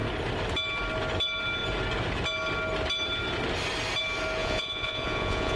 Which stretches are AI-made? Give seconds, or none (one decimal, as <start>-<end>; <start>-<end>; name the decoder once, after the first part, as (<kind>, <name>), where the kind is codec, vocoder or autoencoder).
4.4-5.6 (vocoder, Vocos)